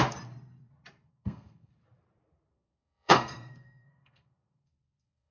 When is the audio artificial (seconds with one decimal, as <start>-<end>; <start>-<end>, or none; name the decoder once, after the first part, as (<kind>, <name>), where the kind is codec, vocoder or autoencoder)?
1.1-1.7 (codec, SNAC); 2.5-5.3